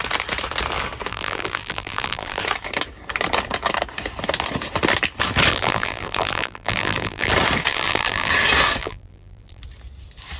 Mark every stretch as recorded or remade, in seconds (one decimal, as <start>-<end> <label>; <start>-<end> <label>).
0.0-1.1 recorded; 1.1-2.4 remade; 2.4-5.5 recorded; 5.5-7.3 remade; 7.3-7.7 recorded; 7.7-8.3 remade; 8.3-8.8 recorded; 8.8-9.6 remade; 9.6-10.4 recorded

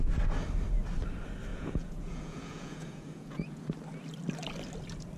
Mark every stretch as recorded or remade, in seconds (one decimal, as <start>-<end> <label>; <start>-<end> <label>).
0.0-1.5 recorded; 1.5-3.6 remade; 3.6-5.2 recorded